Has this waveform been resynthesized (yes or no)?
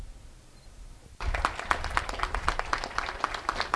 no